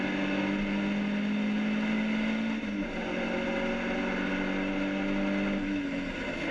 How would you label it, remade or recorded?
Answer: recorded